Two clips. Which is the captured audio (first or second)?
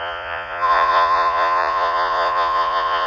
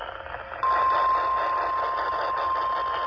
second